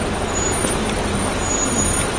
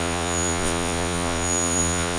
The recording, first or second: first